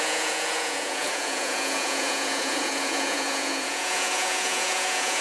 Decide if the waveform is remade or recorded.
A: remade